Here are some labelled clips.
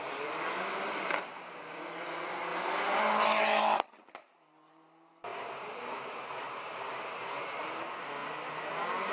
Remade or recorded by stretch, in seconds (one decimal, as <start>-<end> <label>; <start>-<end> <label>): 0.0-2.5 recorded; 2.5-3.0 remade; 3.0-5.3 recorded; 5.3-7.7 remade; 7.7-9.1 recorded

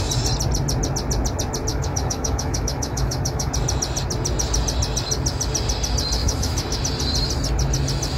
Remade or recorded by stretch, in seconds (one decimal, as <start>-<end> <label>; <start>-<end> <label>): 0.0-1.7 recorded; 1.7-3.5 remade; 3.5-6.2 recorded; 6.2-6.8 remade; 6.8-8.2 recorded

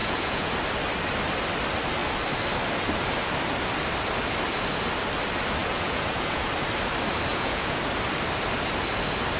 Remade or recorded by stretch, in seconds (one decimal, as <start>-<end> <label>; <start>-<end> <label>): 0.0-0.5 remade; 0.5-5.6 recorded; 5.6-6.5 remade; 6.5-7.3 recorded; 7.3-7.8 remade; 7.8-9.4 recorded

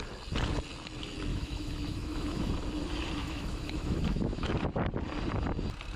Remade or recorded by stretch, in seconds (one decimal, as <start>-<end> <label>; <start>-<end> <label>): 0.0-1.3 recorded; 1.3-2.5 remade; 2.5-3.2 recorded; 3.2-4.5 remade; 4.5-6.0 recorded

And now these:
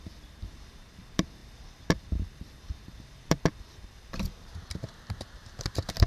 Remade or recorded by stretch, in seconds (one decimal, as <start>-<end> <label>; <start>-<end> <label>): 0.0-6.1 remade

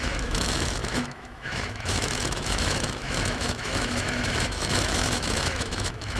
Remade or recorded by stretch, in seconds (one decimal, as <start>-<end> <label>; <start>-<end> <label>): 0.0-6.2 remade

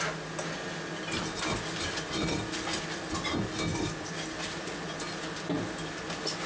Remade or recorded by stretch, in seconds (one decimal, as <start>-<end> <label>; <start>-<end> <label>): 0.0-3.7 recorded; 3.7-4.6 remade; 4.6-6.5 recorded

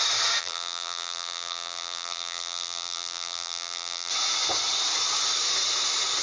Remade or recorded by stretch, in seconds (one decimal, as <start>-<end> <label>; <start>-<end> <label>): 0.0-0.4 recorded; 0.4-4.1 remade; 4.1-6.2 recorded